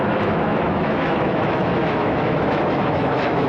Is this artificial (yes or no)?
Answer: yes